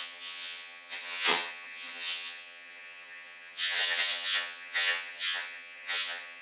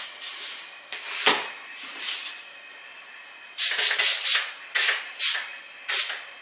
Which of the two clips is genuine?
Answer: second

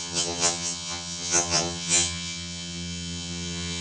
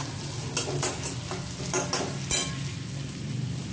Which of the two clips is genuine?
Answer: second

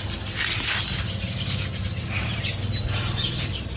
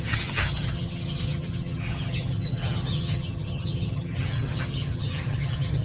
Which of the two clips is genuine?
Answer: first